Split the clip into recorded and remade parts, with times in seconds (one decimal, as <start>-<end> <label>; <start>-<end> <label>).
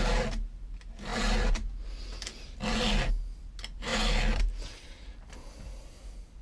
0.0-6.4 recorded